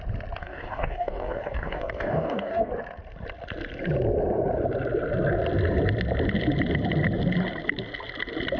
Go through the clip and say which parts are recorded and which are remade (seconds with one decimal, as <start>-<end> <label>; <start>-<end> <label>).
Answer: 0.0-0.4 recorded; 0.4-2.7 remade; 2.7-8.6 recorded